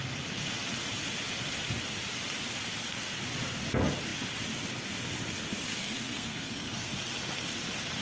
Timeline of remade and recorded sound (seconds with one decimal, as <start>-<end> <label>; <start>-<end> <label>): 0.0-5.8 recorded; 5.8-6.9 remade; 6.9-8.0 recorded